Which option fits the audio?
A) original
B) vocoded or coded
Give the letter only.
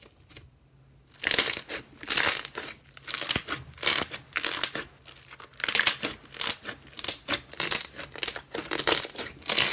A